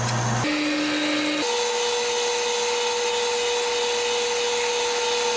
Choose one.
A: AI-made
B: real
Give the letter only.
B